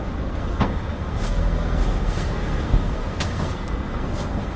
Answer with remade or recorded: remade